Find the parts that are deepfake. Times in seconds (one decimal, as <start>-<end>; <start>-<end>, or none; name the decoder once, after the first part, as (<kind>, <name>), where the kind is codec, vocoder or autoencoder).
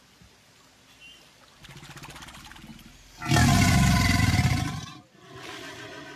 none